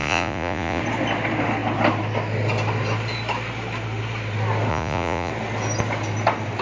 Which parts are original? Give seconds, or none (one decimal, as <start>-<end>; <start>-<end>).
0.8-4.7; 5.3-6.6